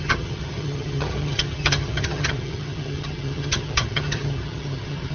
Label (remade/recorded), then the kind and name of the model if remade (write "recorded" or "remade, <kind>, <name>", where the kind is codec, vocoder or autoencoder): remade, vocoder, HiFi-GAN